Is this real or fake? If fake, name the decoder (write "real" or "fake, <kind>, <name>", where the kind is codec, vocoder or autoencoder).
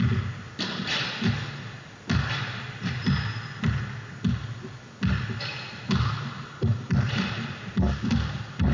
real